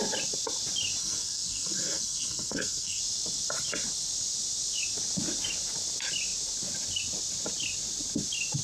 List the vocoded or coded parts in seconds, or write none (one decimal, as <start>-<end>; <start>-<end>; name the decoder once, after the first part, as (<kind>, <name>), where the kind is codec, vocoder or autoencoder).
1.0-3.0 (codec, SNAC)